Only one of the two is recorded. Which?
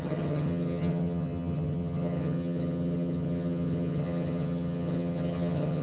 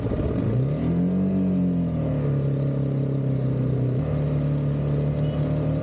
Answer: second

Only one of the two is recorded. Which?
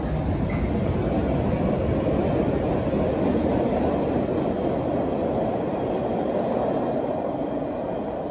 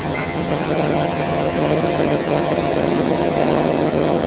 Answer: first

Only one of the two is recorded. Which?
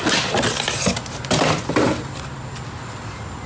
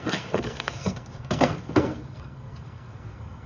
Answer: first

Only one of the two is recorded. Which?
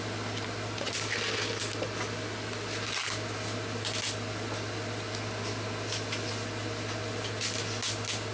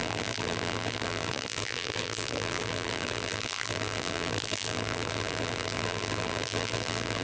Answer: first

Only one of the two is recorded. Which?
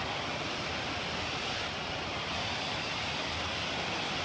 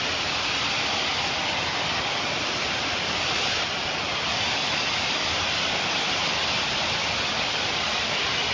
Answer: first